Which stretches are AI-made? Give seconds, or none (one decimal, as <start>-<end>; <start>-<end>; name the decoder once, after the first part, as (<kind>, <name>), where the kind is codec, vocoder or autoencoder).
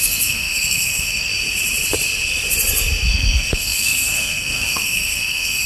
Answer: 0.0-1.3 (codec, SNAC); 3.1-5.7